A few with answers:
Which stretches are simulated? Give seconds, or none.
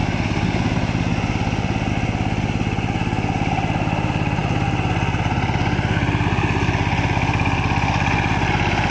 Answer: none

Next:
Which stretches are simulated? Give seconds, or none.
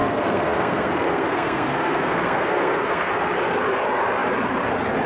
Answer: 0.0-3.1 (codec, SNAC)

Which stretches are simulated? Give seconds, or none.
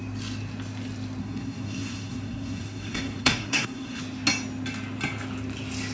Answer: 1.2-4.0 (codec, SNAC)